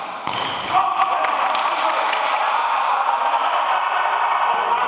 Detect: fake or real real